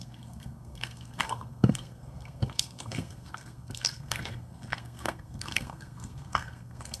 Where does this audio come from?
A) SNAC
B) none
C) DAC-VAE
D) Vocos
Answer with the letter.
A